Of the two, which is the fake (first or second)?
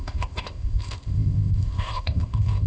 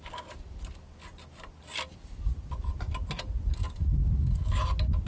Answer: first